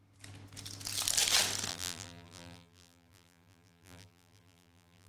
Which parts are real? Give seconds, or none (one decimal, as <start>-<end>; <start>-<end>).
0.0-1.7